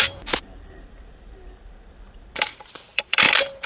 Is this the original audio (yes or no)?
no